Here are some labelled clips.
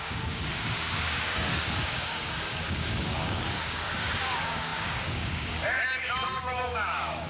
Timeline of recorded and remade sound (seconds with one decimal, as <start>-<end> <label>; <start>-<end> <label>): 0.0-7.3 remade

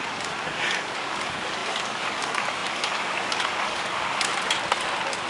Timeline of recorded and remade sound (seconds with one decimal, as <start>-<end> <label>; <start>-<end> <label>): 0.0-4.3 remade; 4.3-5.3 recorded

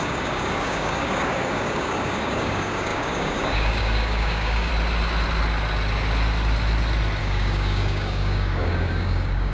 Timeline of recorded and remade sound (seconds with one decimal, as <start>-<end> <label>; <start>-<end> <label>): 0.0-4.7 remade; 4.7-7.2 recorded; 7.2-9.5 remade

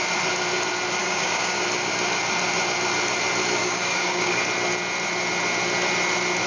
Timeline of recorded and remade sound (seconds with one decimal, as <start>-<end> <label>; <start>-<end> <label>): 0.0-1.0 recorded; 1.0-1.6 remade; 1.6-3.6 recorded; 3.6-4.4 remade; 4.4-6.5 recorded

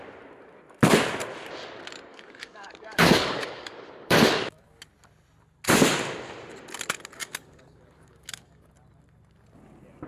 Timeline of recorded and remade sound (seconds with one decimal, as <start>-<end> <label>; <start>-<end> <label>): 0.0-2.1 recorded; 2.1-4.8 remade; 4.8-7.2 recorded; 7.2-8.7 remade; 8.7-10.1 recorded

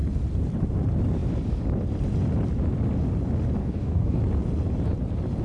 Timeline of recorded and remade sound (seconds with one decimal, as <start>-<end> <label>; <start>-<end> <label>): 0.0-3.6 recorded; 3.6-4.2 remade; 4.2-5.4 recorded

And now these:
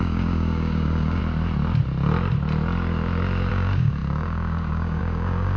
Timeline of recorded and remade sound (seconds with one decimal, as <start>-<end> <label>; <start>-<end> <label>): 0.0-1.2 remade; 1.2-3.5 recorded; 3.5-5.6 remade

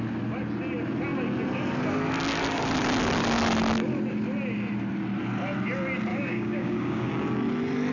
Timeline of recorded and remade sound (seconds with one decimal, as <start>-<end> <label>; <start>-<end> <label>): 0.0-6.1 recorded; 6.1-7.1 remade; 7.1-7.9 recorded